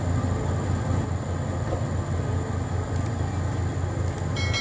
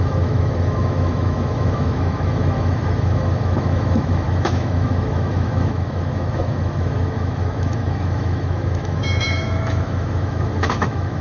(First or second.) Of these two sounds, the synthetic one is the second